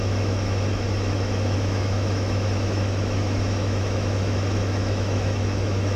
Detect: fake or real fake